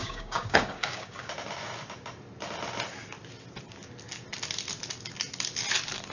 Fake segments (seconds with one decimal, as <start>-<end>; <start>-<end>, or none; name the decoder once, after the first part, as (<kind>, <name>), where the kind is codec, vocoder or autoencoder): 0.0-1.3 (codec, DAC)